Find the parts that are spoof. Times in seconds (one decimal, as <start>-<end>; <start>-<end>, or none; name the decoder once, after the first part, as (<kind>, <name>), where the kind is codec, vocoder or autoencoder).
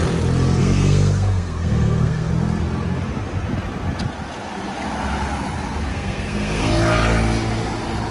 0.6-2.3 (codec, SNAC); 5.9-6.7